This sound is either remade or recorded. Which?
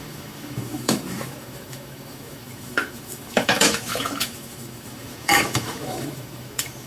remade